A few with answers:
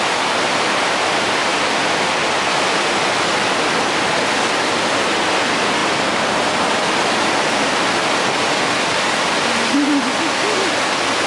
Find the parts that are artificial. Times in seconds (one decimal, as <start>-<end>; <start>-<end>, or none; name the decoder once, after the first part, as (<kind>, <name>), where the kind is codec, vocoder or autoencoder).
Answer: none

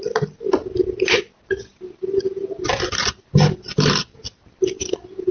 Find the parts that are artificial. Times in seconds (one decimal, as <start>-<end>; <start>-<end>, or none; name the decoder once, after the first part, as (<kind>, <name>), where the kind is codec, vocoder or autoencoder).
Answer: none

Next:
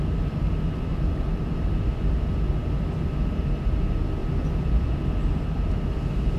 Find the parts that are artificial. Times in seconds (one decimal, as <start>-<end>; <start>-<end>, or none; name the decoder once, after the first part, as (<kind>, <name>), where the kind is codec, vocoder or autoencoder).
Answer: 0.9-2.3 (vocoder, BigVGAN v2); 4.2-4.9